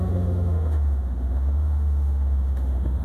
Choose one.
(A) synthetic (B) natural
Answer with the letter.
A